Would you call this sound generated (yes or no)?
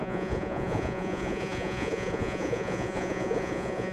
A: yes